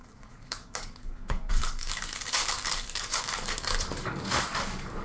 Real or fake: fake